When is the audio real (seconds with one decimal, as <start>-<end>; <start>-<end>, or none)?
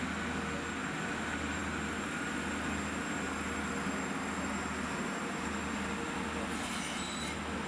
0.0-7.7